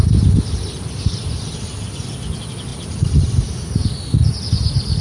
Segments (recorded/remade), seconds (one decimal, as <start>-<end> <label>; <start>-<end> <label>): 0.0-5.0 recorded